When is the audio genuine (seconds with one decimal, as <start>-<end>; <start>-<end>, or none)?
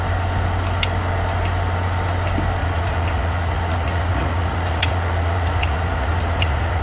0.0-2.6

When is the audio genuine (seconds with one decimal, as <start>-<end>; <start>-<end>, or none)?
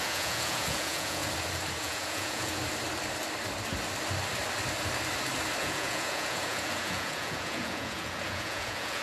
1.2-1.8; 2.6-5.6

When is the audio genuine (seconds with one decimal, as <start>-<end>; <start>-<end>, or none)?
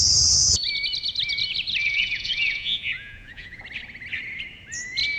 0.0-1.8; 3.6-5.2